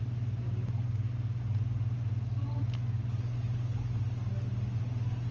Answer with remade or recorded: recorded